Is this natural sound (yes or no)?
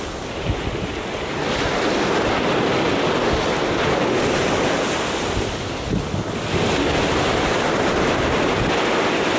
yes